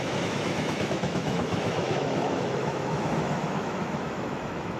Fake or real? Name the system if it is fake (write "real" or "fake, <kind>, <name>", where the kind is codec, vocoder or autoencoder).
fake, autoencoder, DAC-VAE